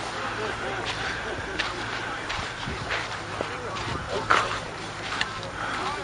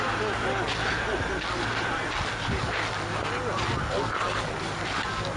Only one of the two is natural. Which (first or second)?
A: second